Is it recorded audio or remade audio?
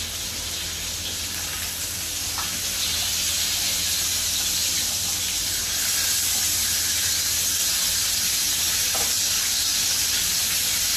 recorded